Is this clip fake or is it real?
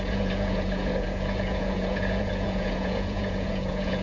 fake